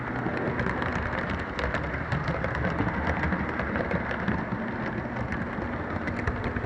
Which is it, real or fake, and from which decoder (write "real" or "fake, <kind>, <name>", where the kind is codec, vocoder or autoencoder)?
real